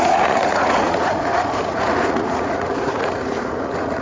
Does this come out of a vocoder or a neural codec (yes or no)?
yes